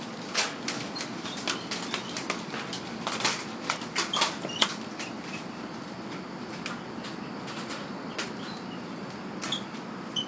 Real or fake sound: real